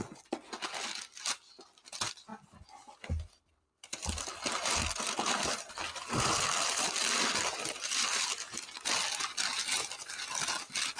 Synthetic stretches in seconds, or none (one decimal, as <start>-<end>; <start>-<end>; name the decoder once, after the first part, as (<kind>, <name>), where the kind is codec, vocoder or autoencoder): none